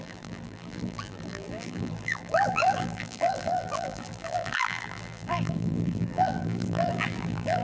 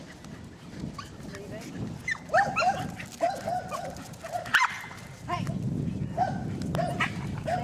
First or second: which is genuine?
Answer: second